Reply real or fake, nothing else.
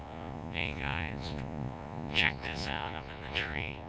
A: fake